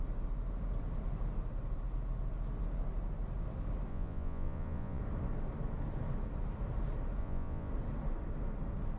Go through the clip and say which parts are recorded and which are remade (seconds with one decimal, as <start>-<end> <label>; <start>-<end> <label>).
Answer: 0.0-3.9 recorded; 3.9-5.0 remade; 5.0-7.2 recorded; 7.2-7.7 remade; 7.7-9.0 recorded